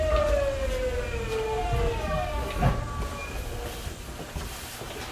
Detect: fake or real real